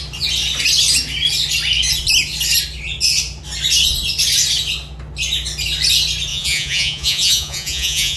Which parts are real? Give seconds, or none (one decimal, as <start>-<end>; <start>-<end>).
0.0-6.3